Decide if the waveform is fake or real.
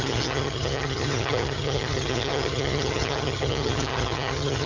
fake